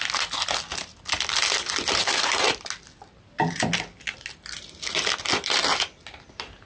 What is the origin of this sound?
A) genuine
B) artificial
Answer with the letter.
A